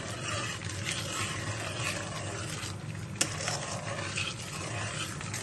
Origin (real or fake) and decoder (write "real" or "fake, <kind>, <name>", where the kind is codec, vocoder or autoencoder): real